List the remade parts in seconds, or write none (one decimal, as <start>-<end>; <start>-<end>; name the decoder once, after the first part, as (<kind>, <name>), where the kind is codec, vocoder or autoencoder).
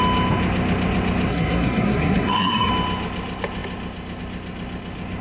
1.3-2.7 (codec, SNAC)